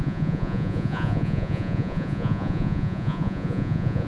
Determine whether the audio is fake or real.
fake